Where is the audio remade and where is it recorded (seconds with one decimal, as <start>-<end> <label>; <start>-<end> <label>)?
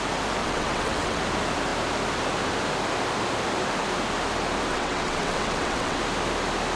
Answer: 0.0-0.4 recorded; 0.4-1.2 remade; 1.2-4.7 recorded; 4.7-6.0 remade; 6.0-6.8 recorded